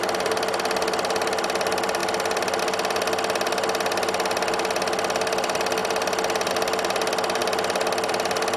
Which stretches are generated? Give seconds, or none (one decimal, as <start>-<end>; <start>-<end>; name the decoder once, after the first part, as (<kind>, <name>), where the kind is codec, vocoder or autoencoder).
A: none